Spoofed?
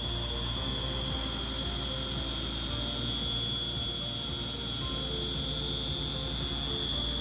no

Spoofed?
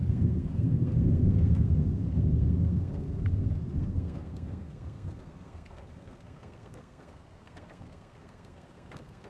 yes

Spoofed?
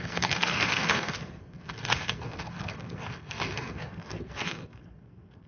yes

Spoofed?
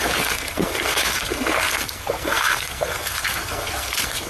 yes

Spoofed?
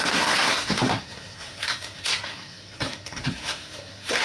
yes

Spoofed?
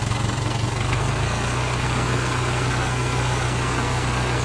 yes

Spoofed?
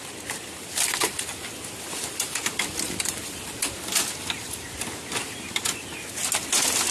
no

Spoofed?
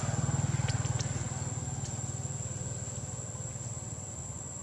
no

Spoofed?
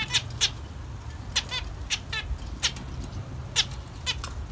no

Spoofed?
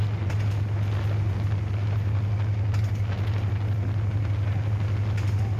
no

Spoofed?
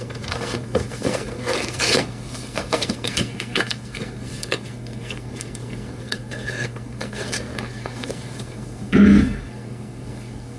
yes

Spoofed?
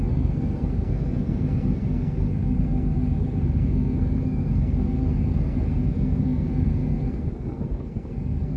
yes